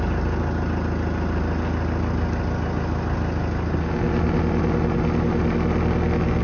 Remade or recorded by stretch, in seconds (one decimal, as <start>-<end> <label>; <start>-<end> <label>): 0.0-6.4 recorded